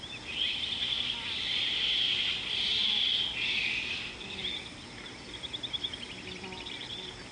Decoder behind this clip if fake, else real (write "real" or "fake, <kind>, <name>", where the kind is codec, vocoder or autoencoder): real